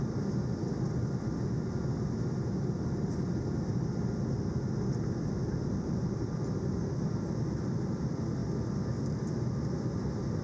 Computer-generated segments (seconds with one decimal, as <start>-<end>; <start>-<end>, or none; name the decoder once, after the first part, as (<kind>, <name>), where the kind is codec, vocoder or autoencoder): none